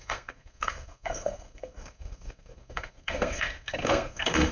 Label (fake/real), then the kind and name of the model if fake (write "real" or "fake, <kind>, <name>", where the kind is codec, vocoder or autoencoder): fake, codec, SNAC